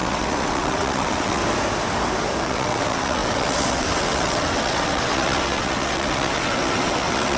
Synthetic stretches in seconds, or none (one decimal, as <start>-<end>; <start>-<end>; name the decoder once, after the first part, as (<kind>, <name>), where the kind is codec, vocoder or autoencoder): 0.0-1.4 (vocoder, WaveNeXt); 2.4-7.4